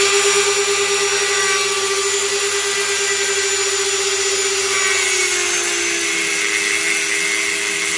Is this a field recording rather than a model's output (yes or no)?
yes